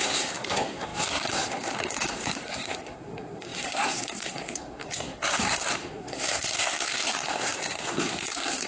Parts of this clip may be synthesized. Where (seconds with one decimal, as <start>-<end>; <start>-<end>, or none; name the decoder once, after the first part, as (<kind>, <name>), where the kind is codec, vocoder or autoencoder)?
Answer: 0.0-8.7 (codec, SNAC)